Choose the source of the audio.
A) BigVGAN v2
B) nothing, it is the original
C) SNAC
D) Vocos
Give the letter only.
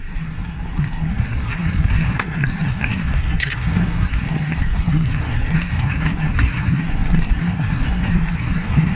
C